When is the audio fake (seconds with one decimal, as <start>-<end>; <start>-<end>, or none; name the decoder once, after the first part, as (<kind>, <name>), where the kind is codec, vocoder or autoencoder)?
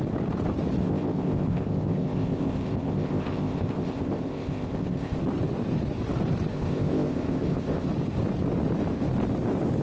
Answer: 0.8-5.2 (codec, ZipCodec); 6.5-7.9